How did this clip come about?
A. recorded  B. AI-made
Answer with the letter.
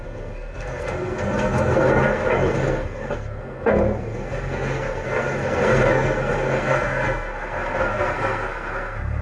B